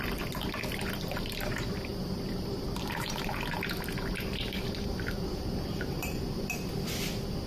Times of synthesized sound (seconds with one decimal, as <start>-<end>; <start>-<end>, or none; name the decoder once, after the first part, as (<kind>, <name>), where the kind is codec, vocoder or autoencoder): 1.9-6.4 (vocoder, BigVGAN v2)